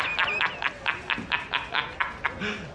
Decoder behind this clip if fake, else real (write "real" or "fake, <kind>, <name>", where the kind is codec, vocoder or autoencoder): real